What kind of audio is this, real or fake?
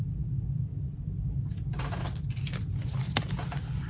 real